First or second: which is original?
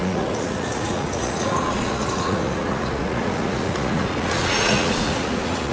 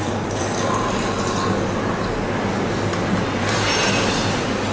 second